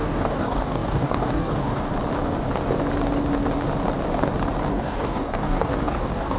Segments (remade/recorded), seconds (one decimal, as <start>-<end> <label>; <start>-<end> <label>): 0.0-1.9 remade; 1.9-4.7 recorded; 4.7-6.4 remade